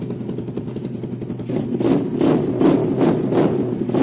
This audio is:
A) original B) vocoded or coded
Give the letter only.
A